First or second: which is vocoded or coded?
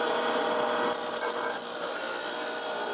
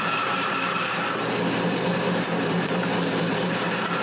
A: second